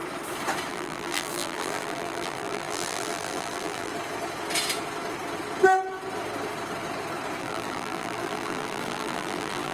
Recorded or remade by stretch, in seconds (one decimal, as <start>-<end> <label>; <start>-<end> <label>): 0.0-0.7 recorded; 0.7-3.9 remade; 3.9-7.4 recorded; 7.4-9.7 remade